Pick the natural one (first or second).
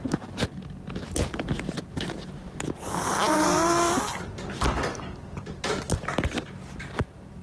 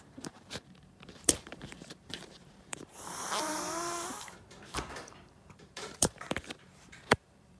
first